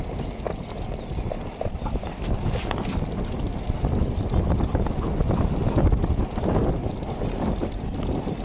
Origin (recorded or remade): recorded